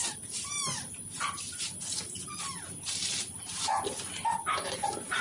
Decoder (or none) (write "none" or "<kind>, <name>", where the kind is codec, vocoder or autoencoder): none